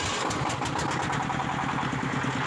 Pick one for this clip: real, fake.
real